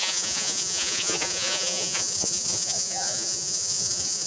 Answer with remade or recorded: remade